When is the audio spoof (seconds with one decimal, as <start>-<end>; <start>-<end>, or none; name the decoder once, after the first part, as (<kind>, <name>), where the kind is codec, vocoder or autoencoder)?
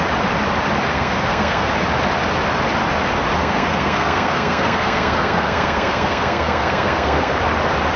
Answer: 0.9-1.7 (codec, SNAC); 3.4-7.3